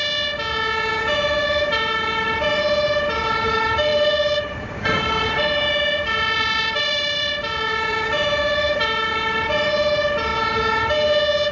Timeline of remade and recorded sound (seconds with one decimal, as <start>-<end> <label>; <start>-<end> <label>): 0.0-1.1 recorded; 1.1-10.3 remade; 10.3-11.5 recorded